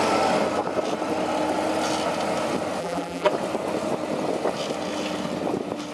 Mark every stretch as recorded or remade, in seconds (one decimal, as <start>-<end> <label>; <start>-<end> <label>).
0.0-2.8 recorded; 2.8-3.3 remade; 3.3-5.9 recorded